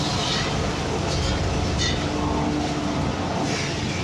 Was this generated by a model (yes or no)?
no